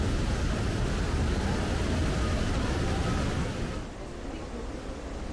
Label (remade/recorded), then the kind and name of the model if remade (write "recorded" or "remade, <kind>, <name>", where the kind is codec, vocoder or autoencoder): recorded